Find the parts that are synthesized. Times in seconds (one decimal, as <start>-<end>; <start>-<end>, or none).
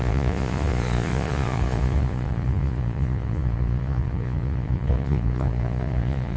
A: 0.0-6.4